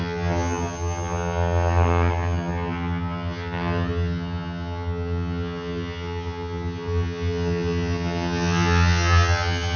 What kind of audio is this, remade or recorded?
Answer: remade